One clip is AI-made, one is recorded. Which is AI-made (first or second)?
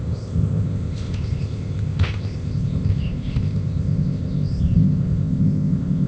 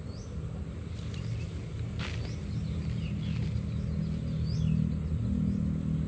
first